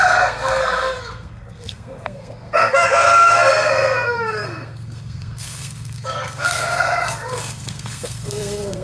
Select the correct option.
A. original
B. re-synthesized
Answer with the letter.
B